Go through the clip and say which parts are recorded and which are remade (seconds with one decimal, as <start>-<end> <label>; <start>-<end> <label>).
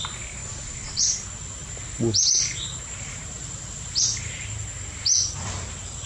0.0-0.4 recorded; 0.4-1.4 remade; 1.4-6.1 recorded